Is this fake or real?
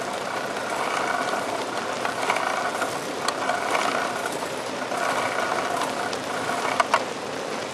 real